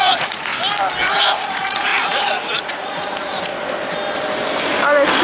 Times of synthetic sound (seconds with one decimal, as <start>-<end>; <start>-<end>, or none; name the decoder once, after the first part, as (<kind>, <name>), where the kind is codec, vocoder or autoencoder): 0.0-0.5 (vocoder, Vocos); 1.1-3.5